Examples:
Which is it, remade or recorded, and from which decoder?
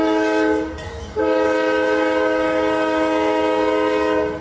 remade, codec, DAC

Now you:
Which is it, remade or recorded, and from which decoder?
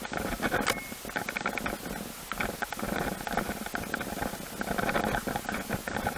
recorded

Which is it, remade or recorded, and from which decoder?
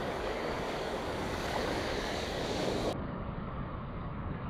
remade, codec, DAC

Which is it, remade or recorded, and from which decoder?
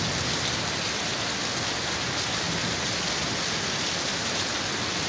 recorded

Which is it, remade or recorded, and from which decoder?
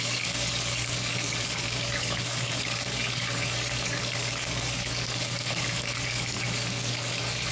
remade, codec, DAC